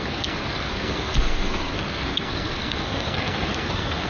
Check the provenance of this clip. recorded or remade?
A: remade